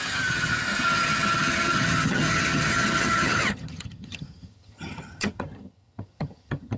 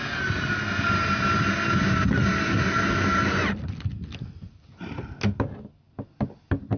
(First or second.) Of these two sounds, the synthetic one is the first